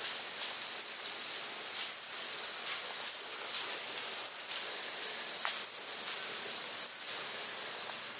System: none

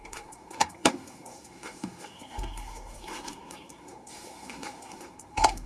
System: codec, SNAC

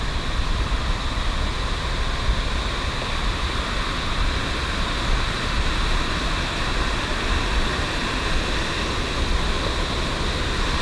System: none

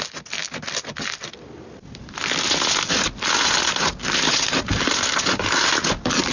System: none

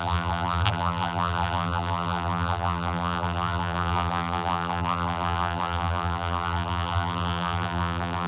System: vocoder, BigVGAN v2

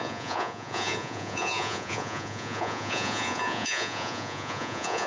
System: vocoder, Vocos